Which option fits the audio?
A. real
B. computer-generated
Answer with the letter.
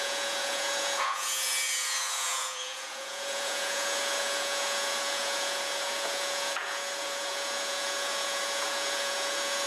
B